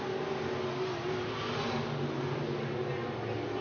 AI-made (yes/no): no